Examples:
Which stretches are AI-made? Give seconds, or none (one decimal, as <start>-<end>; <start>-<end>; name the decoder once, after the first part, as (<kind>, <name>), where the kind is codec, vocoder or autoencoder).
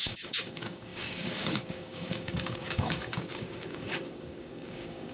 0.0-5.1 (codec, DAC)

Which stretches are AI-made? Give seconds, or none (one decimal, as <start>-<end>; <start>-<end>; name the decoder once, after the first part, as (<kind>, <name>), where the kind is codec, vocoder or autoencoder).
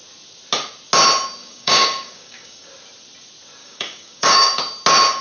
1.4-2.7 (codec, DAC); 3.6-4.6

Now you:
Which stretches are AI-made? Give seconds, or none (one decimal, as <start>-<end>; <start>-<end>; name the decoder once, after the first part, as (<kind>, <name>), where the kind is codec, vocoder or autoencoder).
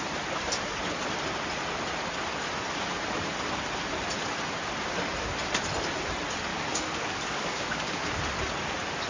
6.5-8.1 (codec, DAC)